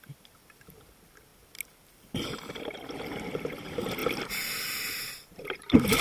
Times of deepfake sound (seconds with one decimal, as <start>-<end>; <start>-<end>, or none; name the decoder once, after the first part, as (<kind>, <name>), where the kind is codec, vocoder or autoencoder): none